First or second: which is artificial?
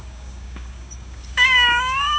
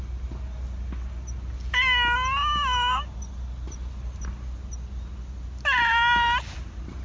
first